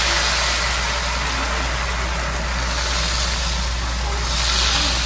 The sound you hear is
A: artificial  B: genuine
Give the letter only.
B